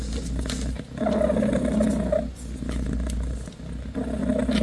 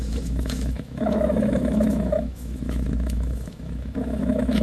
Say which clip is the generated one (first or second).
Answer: second